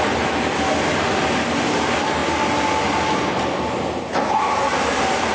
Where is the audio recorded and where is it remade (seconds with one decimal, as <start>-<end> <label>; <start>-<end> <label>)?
0.0-5.3 recorded

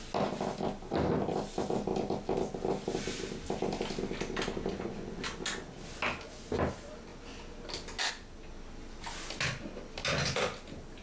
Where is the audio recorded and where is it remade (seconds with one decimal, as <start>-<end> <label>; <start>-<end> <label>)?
0.0-4.7 recorded; 4.7-5.2 remade; 5.2-11.0 recorded